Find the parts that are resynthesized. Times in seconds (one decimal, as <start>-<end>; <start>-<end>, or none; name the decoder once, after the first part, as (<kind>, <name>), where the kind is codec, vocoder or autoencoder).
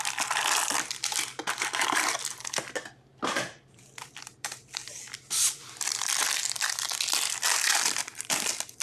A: 3.1-7.0 (vocoder, BigVGAN v2)